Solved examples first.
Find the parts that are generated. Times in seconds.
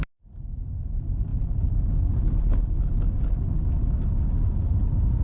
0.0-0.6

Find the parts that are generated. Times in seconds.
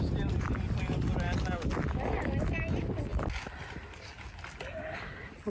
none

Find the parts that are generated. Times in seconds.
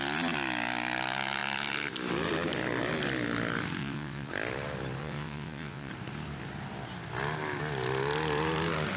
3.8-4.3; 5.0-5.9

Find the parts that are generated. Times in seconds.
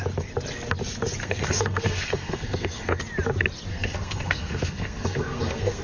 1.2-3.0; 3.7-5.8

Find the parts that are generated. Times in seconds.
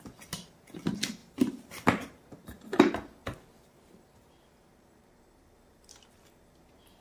1.2-1.7; 3.2-5.2